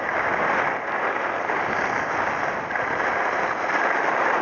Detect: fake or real real